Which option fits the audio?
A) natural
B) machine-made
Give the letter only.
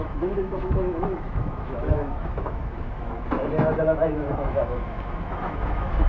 B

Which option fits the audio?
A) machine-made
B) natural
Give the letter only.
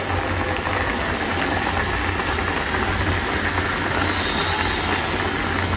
B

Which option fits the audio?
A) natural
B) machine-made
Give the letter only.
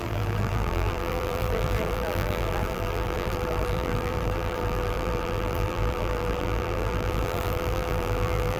B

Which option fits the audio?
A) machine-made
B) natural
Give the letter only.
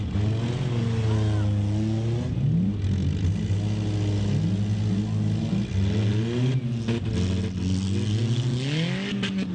B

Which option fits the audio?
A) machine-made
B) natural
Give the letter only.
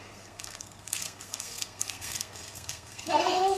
A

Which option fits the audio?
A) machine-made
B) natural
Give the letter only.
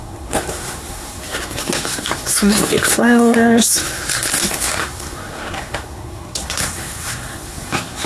A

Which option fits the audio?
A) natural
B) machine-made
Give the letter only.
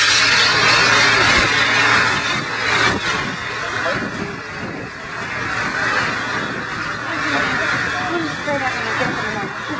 A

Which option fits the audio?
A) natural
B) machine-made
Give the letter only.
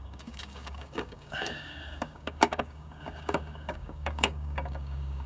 B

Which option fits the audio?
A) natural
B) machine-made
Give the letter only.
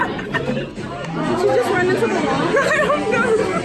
A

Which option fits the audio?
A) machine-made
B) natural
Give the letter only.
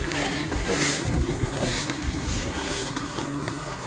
A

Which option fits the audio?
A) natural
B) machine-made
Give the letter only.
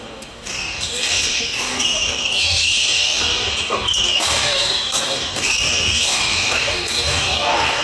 B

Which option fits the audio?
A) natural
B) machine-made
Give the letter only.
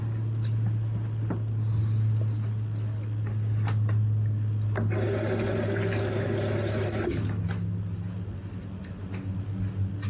A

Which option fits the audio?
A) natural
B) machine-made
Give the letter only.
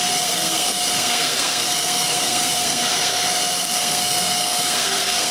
B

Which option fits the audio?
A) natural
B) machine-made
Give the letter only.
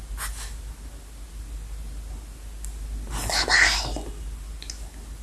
A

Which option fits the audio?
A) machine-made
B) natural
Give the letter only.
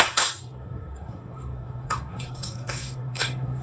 A